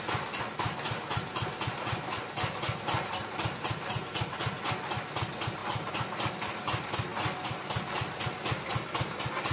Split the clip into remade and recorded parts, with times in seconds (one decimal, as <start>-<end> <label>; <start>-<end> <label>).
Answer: 0.0-9.5 recorded